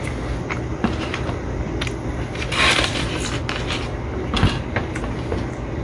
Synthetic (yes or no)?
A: no